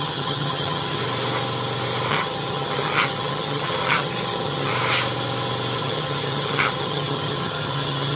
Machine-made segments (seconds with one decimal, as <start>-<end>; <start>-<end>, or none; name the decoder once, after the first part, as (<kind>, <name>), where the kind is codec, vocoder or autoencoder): 0.0-1.0 (vocoder, HiFi-GAN); 2.1-4.7; 5.8-8.2